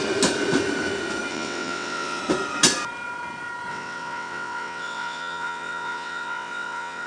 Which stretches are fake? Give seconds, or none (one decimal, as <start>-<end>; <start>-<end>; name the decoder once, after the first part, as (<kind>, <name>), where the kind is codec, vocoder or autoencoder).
1.3-2.2 (vocoder, WaveNeXt); 3.7-7.1